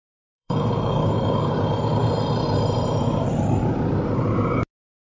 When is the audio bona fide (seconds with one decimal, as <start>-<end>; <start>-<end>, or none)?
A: 1.5-5.1